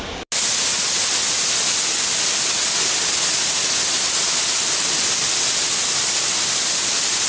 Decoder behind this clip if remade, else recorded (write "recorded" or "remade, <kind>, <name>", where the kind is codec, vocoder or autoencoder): recorded